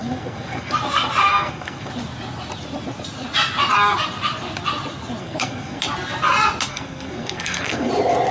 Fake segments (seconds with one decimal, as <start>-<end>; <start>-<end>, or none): 0.0-0.7; 1.3-1.9; 5.2-5.8; 6.7-7.9